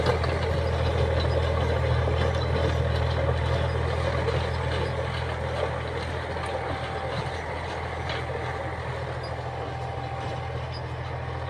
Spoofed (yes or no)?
no